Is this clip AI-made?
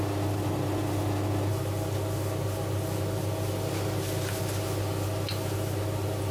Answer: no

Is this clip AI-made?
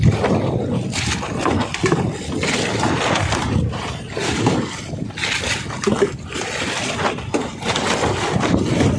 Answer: no